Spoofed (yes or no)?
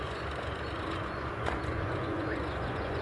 yes